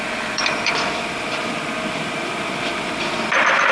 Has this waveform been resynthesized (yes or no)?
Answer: yes